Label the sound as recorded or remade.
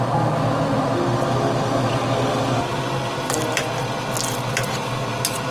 recorded